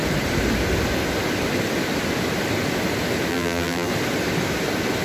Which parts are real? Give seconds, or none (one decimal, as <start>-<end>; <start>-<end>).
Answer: 0.0-3.3; 3.9-5.0